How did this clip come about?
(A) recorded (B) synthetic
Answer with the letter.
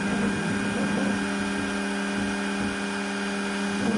A